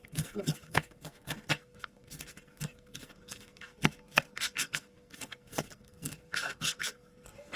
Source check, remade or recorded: remade